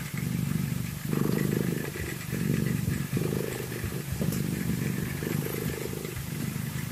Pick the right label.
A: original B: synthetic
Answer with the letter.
B